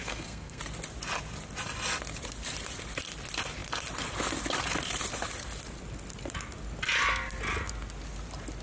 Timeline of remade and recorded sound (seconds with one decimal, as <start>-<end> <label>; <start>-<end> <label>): 0.0-0.6 remade; 0.6-8.6 recorded